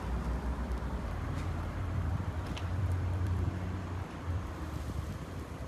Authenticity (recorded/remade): remade